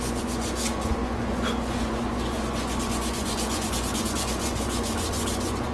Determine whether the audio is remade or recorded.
remade